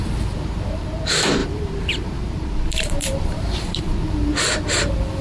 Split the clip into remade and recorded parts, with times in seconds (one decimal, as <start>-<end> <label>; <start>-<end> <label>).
0.0-1.4 recorded; 1.4-3.8 remade; 3.8-5.2 recorded